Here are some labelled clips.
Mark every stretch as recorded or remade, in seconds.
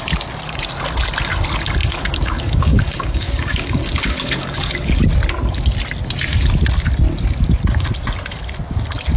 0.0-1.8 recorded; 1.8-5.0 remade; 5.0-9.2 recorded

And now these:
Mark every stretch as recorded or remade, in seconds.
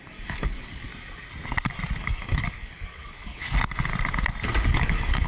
0.0-0.9 remade; 0.9-2.0 recorded; 2.0-3.9 remade; 3.9-4.6 recorded; 4.6-5.3 remade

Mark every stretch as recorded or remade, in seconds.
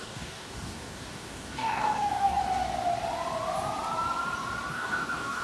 0.0-2.4 remade; 2.4-4.7 recorded; 4.7-5.4 remade